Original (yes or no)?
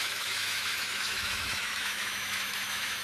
no